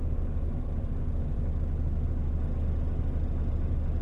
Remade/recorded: recorded